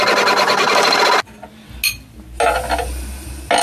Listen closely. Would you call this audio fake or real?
real